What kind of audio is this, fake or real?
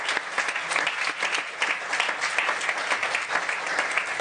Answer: real